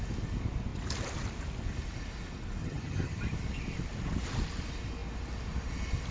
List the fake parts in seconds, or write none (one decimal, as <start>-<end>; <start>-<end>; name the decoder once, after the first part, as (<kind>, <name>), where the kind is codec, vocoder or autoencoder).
2.6-3.2 (vocoder, HiFi-GAN)